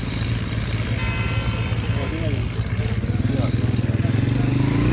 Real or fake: real